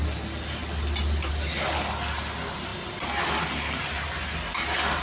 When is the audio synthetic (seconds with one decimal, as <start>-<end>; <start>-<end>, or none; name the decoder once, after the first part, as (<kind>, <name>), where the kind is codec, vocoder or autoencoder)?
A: none